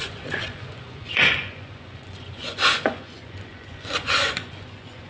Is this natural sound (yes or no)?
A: no